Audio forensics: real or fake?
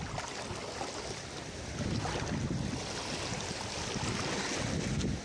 real